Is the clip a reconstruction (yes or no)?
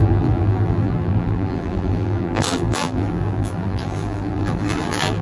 yes